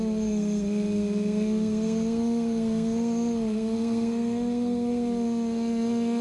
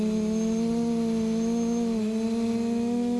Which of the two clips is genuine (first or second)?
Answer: second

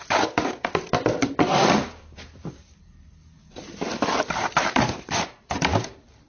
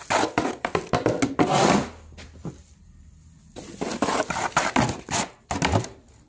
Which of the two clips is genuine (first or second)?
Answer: second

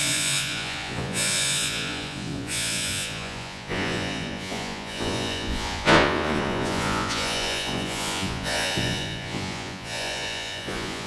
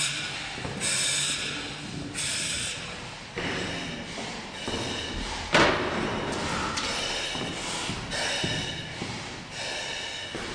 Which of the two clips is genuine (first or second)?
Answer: second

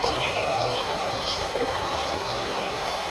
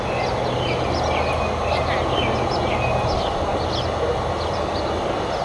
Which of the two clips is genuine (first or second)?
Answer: second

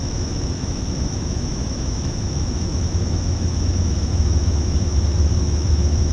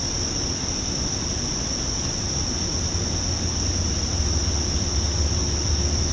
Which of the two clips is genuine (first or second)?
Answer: second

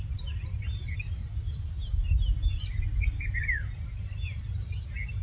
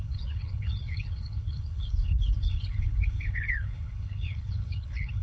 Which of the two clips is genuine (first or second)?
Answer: first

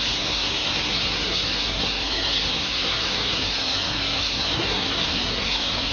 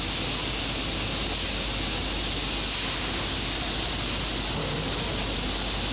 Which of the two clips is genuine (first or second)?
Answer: second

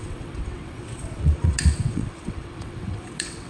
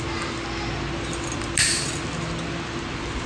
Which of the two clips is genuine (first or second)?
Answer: second